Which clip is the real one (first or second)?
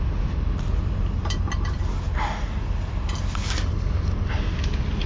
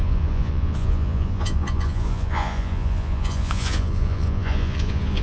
first